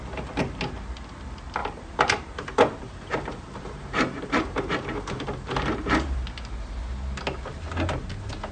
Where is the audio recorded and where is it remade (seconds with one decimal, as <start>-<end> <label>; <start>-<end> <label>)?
0.0-1.6 recorded; 1.6-6.2 remade; 6.2-8.5 recorded